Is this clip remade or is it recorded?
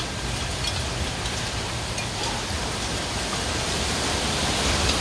recorded